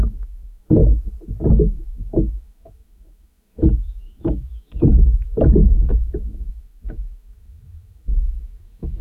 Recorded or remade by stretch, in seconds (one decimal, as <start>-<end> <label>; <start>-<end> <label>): 0.0-0.8 remade; 0.8-1.5 recorded; 1.5-9.0 remade